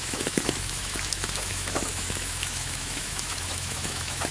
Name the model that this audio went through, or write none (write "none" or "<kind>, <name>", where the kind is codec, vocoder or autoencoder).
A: autoencoder, DAC-VAE